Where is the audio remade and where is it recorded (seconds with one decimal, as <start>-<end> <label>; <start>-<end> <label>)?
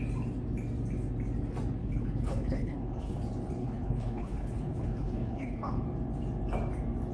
0.0-1.8 recorded; 1.8-3.2 remade; 3.2-3.6 recorded; 3.6-5.8 remade; 5.8-7.1 recorded